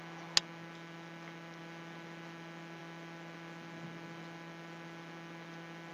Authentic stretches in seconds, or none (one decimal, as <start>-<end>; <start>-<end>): 0.0-5.9